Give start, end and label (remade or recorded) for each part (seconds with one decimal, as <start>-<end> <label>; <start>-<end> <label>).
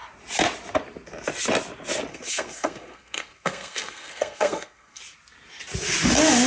0.0-2.1 recorded; 2.1-5.0 remade; 5.0-6.5 recorded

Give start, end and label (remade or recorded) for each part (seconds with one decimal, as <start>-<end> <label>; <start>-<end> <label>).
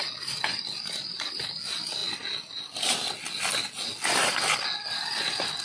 0.0-5.6 recorded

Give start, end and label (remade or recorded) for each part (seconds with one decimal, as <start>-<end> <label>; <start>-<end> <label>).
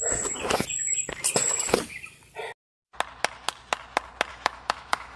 0.0-4.3 recorded; 4.3-5.2 remade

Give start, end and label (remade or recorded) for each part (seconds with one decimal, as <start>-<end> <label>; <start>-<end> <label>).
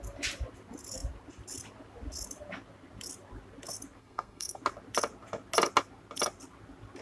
0.0-4.0 recorded; 4.0-4.6 remade; 4.6-7.0 recorded